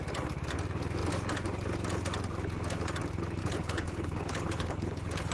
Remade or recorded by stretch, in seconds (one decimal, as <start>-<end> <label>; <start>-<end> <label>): 0.0-3.4 recorded; 3.4-5.3 remade